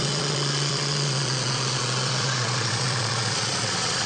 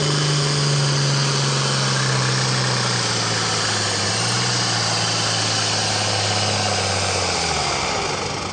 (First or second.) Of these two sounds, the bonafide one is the second